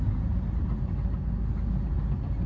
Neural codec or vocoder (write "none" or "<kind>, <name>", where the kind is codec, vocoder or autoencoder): none